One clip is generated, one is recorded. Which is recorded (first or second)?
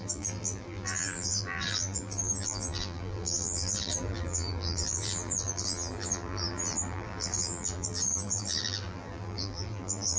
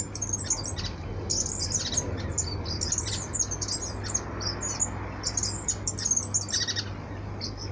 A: second